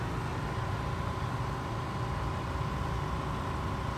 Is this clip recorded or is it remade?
recorded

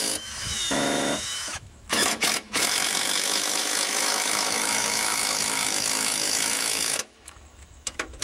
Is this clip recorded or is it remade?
remade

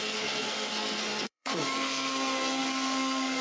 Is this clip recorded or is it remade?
remade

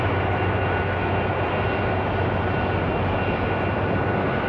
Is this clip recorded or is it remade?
recorded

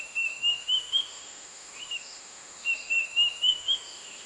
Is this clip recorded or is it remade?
remade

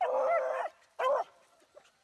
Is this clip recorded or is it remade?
recorded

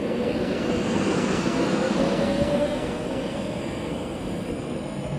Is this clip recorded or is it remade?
remade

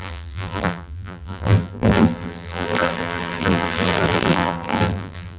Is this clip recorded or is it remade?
remade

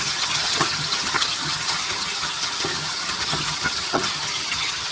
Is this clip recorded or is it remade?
remade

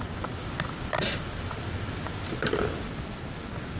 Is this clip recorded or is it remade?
recorded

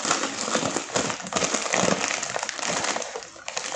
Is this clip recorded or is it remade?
remade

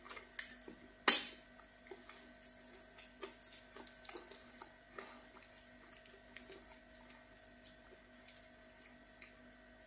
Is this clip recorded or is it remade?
recorded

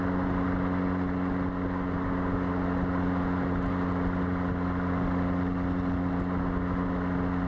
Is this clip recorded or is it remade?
recorded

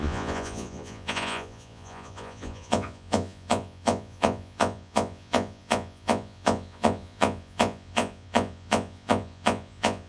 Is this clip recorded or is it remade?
remade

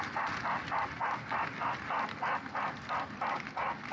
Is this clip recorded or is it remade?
recorded